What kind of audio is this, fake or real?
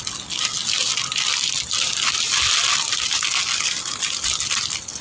real